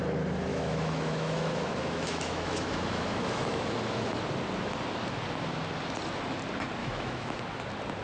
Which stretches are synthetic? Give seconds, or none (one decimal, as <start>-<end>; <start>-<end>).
0.5-4.2; 6.8-7.4